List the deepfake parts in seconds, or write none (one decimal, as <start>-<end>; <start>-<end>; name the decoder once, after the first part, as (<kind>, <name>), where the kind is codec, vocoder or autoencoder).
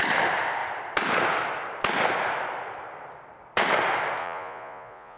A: 4.2-5.2 (vocoder, Vocos)